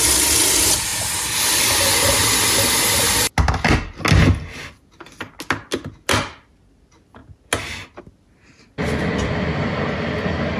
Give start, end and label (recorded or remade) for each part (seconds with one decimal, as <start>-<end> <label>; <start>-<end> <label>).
0.0-10.6 recorded